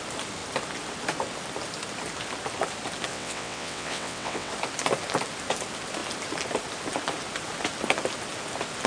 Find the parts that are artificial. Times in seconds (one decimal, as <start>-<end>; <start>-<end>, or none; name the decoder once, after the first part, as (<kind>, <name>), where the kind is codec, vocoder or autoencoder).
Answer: 3.1-4.5 (vocoder, WaveNeXt)